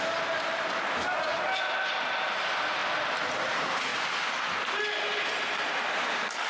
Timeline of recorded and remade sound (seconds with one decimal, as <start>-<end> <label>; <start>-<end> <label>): 0.0-1.3 recorded; 1.3-2.0 remade; 2.0-2.8 recorded; 2.8-3.3 remade; 3.3-6.5 recorded